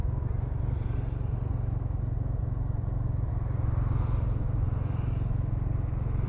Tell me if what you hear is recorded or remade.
recorded